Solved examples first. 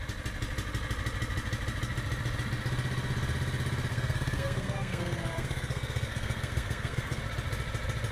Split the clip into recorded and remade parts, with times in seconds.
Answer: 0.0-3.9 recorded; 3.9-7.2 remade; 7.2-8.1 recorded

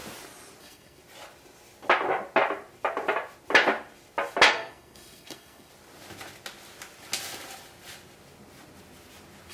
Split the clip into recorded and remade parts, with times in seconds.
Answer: 0.0-0.6 recorded; 0.6-1.0 remade; 1.0-4.5 recorded; 4.5-5.7 remade; 5.7-9.5 recorded

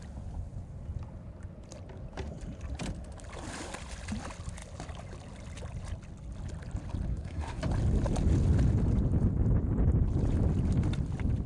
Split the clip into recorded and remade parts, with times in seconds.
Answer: 0.0-7.1 recorded; 7.1-7.6 remade; 7.6-11.5 recorded

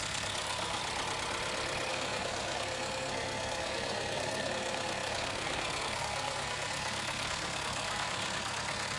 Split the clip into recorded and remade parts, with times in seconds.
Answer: 0.0-0.8 remade; 0.8-1.9 recorded; 1.9-9.0 remade

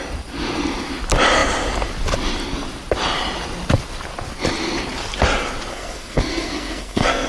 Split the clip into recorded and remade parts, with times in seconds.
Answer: 0.0-5.7 recorded; 5.7-7.3 remade

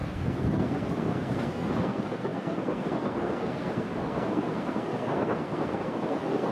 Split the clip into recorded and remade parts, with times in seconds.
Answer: 0.0-6.5 remade